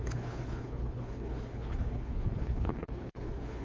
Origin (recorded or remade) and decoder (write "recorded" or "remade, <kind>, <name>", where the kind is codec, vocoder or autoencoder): remade, codec, HILCodec